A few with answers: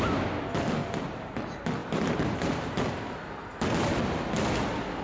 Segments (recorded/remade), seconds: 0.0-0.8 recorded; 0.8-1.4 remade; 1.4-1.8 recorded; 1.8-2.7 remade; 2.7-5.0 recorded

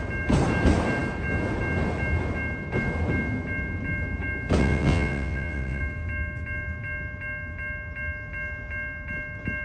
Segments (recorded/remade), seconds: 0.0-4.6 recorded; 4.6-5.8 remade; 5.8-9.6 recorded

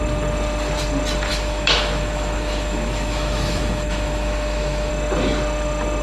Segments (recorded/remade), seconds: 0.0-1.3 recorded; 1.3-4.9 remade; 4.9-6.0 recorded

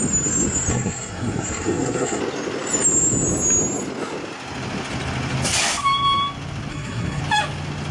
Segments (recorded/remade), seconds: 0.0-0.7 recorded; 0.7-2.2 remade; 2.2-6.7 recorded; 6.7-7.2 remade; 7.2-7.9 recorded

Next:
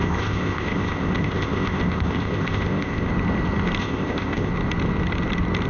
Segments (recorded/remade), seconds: 0.0-3.1 remade; 3.1-3.8 recorded; 3.8-4.5 remade; 4.5-5.7 recorded

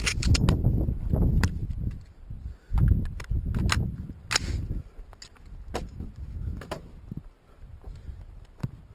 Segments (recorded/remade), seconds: 0.0-8.9 recorded

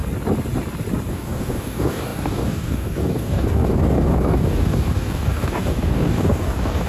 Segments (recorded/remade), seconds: 0.0-1.1 recorded; 1.1-6.9 remade